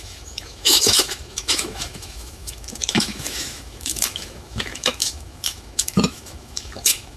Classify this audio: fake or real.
fake